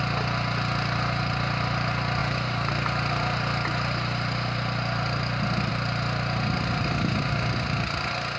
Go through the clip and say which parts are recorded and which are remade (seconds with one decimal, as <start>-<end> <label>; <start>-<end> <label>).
0.0-8.4 recorded